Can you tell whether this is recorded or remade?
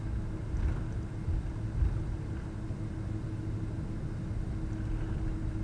recorded